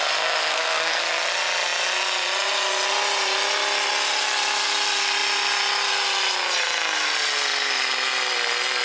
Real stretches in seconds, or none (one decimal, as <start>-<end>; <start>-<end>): 0.0-0.4; 1.0-8.8